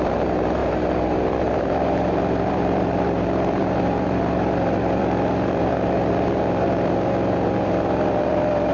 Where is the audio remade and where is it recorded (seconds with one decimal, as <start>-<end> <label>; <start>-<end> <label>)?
0.0-8.7 remade